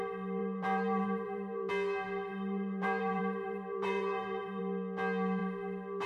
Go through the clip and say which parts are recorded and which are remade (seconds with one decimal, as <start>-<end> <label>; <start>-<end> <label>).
0.0-0.4 recorded; 0.4-1.7 remade; 1.7-2.3 recorded; 2.3-4.6 remade; 4.6-6.1 recorded